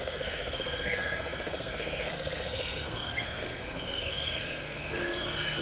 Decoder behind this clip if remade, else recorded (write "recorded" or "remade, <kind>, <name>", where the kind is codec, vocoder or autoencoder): remade, codec, SNAC